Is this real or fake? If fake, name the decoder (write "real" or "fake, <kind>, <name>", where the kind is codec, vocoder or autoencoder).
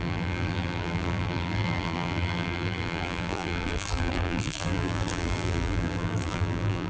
fake, vocoder, BigVGAN v2